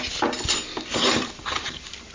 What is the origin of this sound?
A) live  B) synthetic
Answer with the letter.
A